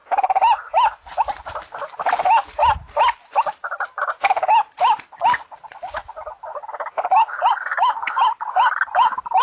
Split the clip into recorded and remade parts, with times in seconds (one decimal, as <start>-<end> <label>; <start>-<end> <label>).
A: 0.0-9.4 recorded